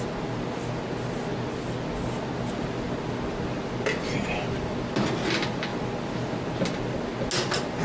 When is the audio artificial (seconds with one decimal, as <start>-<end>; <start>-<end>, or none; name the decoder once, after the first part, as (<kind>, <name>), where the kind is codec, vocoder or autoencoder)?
none